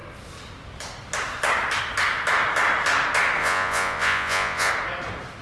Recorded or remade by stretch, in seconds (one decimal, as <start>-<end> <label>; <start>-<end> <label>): 0.0-3.4 recorded; 3.4-4.7 remade; 4.7-5.4 recorded